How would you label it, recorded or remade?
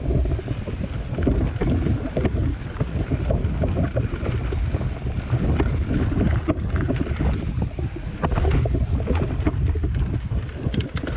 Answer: recorded